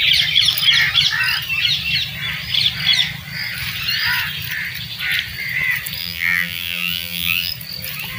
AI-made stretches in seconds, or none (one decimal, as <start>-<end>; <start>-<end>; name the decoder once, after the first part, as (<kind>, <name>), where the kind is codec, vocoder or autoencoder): 6.0-7.5 (vocoder, BigVGAN v2)